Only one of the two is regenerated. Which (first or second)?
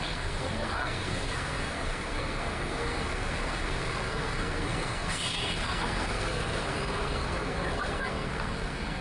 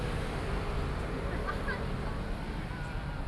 first